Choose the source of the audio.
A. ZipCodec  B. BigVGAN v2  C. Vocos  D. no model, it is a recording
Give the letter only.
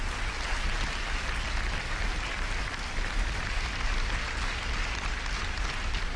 D